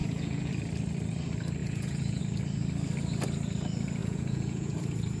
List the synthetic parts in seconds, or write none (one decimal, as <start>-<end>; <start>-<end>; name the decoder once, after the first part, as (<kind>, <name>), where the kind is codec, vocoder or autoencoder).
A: 0.0-0.5 (vocoder, Vocos); 1.6-2.2; 4.0-4.8